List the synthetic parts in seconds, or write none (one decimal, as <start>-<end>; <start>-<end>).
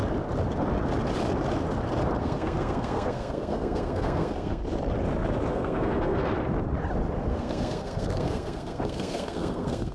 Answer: 2.2-4.6; 5.5-6.3; 7.3-9.9